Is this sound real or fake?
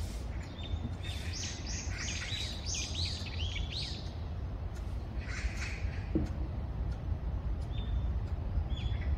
fake